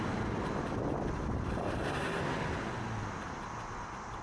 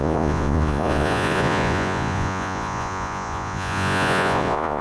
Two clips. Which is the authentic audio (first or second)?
first